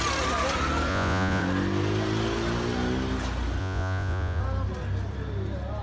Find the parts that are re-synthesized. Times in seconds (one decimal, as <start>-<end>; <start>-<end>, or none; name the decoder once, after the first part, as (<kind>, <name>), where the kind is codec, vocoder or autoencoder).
0.9-1.4 (vocoder, Vocos); 3.6-4.4